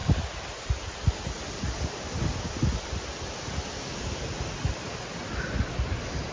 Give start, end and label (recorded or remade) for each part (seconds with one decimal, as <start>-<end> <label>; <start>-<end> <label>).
0.0-6.3 recorded